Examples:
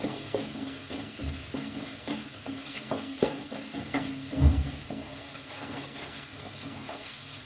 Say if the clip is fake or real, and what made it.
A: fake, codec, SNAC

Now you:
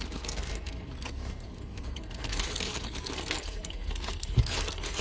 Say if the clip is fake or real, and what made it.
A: fake, codec, SNAC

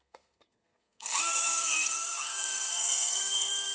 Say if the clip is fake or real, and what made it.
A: fake, codec, SNAC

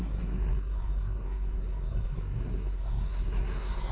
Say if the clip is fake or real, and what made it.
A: fake, codec, SNAC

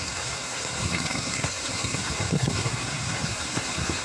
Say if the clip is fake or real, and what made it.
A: fake, codec, SNAC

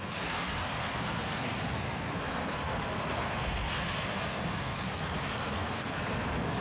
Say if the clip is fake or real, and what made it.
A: fake, codec, SNAC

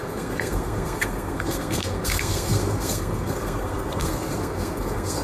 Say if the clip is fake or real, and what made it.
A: fake, codec, SNAC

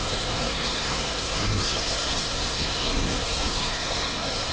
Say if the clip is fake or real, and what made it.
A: fake, codec, SNAC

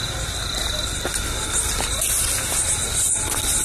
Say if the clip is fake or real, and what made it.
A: real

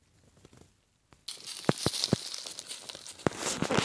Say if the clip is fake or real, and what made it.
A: real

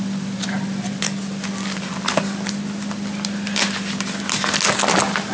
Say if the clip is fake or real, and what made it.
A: real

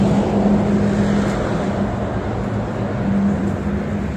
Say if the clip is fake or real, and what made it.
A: real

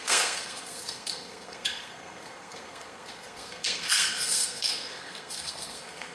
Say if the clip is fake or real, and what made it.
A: fake, codec, SNAC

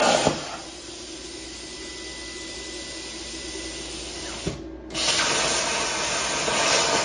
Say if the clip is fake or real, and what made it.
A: real